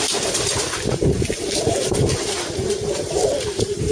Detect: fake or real fake